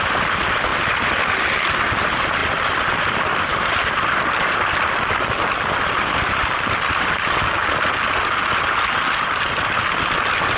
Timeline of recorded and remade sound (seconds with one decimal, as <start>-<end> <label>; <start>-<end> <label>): 0.0-2.4 recorded; 2.4-7.4 remade; 7.4-10.6 recorded